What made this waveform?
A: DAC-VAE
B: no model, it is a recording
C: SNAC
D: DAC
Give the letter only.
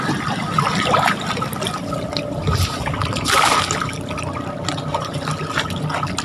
B